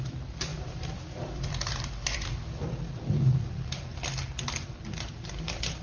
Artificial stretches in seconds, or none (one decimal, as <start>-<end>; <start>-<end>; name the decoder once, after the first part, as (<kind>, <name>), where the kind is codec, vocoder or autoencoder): 0.5-4.0 (vocoder, BigVGAN v2)